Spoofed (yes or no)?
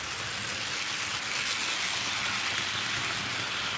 no